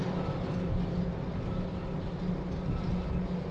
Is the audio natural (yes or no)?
yes